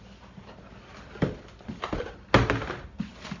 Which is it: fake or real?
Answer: real